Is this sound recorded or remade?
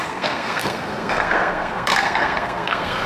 remade